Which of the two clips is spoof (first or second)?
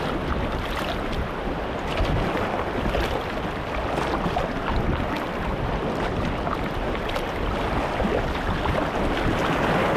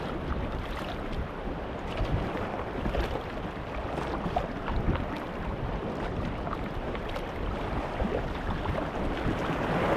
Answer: second